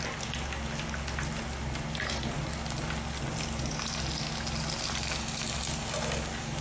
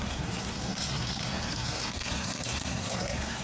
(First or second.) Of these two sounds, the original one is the first